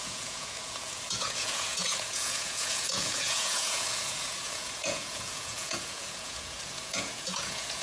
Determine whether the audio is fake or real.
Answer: fake